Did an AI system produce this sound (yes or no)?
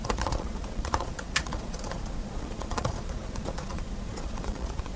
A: yes